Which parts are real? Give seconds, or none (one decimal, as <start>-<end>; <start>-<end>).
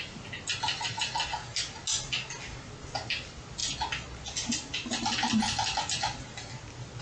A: 0.0-7.0